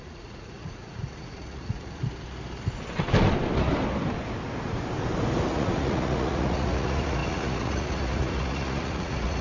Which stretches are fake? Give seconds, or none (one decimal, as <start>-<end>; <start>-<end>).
0.0-2.0; 5.5-9.4